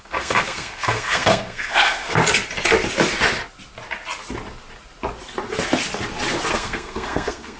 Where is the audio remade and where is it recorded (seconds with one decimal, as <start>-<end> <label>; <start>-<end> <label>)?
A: 0.0-2.2 remade; 2.2-6.5 recorded; 6.5-7.6 remade